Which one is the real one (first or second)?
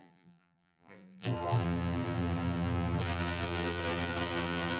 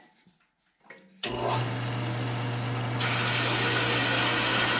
second